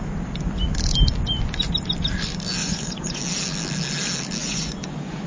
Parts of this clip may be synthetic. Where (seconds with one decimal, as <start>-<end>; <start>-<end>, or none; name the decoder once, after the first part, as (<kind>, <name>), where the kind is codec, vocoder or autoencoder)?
2.6-3.2 (vocoder, Vocos); 4.4-5.3